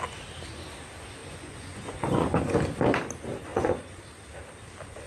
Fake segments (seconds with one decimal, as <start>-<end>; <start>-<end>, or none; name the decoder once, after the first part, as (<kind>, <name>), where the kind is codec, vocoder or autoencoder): 1.2-2.4 (vocoder, Vocos); 3.5-4.0

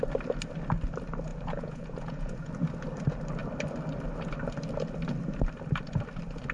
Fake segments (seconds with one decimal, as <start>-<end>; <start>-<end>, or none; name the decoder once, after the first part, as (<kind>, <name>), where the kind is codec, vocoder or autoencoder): 1.3-2.5 (vocoder, Vocos)

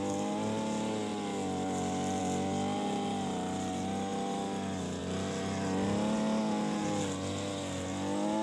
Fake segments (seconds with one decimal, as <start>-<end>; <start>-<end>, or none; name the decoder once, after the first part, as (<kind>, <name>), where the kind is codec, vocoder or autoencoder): none

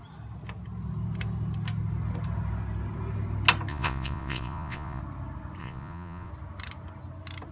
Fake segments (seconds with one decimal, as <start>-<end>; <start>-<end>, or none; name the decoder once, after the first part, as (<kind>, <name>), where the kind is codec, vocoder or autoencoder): 3.7-5.0 (vocoder, Vocos); 5.6-6.3

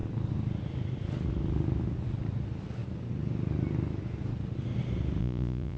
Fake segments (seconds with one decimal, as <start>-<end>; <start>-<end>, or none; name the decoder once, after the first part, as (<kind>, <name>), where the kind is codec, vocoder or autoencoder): 5.2-5.8 (vocoder, Vocos)

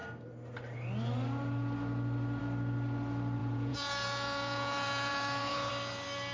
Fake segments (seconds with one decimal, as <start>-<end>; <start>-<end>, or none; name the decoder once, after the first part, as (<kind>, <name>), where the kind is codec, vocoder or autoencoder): 3.4-5.7 (vocoder, Vocos)

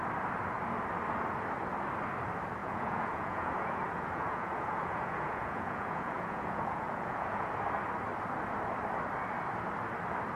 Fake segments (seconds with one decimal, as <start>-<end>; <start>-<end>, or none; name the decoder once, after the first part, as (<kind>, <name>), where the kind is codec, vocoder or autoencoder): 2.6-7.5 (vocoder, Vocos)